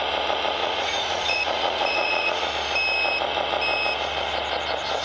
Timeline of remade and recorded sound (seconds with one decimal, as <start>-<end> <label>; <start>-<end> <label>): 0.0-0.6 recorded; 0.6-2.5 remade; 2.5-5.0 recorded